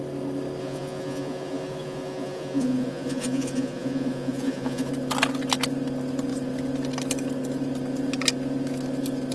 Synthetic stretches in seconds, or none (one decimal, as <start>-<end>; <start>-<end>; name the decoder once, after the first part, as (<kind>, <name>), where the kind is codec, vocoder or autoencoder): 0.6-4.9 (vocoder, Vocos)